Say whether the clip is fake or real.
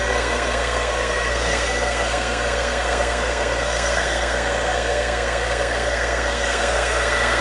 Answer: fake